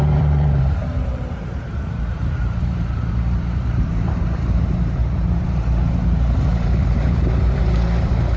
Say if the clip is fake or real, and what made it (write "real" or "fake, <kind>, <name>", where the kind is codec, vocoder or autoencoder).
fake, vocoder, BigVGAN v2